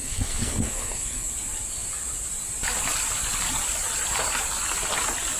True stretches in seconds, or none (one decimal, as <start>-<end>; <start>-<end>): 1.3-5.4